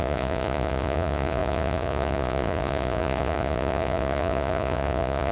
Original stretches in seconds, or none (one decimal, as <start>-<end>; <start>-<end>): none